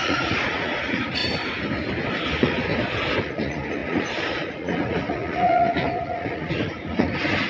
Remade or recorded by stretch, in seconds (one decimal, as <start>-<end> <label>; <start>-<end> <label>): 0.0-1.2 remade; 1.2-2.3 recorded; 2.3-2.7 remade; 2.7-3.2 recorded; 3.2-7.5 remade